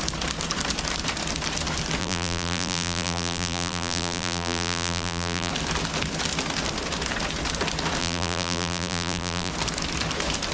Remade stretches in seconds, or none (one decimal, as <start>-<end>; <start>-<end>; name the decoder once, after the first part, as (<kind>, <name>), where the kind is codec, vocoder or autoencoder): 2.0-5.5 (vocoder, BigVGAN v2); 8.0-9.5